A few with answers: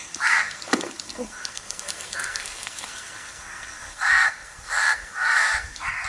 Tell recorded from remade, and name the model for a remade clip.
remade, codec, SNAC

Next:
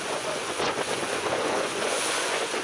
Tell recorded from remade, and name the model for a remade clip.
remade, vocoder, Vocos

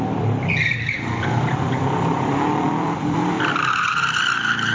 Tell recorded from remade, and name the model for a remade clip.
remade, vocoder, BigVGAN v2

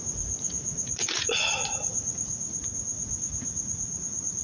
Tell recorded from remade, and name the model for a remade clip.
remade, vocoder, Vocos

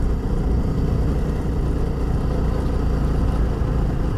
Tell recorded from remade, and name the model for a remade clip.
recorded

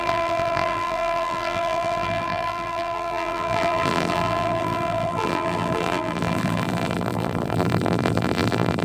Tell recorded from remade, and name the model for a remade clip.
remade, vocoder, BigVGAN v2